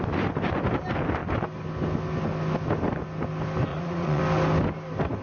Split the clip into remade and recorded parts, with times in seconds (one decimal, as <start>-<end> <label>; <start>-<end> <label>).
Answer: 0.0-3.7 recorded; 3.7-4.2 remade; 4.2-5.2 recorded